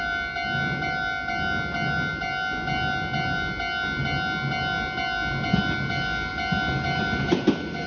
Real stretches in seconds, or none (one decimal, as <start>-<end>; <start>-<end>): 0.0-7.9

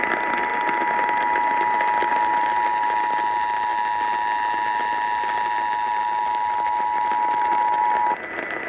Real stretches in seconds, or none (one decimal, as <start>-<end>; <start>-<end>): 0.0-8.7

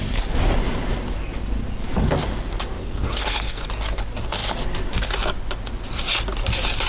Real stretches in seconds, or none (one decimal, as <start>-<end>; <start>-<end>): 0.0-2.8; 3.7-6.9

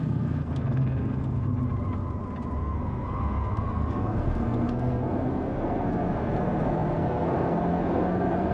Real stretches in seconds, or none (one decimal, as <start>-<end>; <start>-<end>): 1.5-2.6